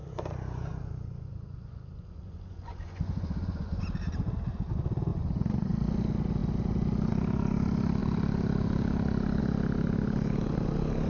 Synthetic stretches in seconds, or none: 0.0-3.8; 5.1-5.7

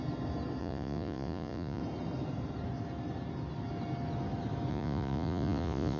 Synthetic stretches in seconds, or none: 0.6-1.8; 4.7-6.0

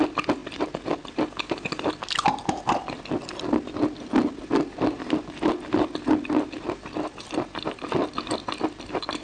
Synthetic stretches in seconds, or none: none